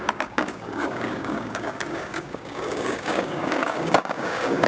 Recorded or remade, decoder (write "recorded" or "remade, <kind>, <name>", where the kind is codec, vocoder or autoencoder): remade, codec, DAC